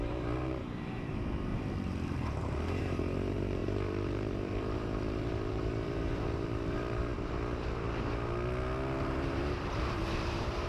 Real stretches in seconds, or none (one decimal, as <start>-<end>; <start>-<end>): 1.5-2.8; 7.1-9.0